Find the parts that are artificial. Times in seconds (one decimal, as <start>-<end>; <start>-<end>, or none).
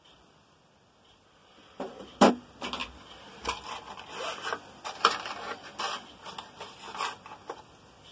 1.4-2.3